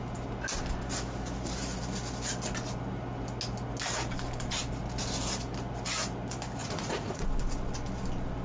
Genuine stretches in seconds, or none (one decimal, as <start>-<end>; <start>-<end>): 0.0-6.6; 7.2-8.4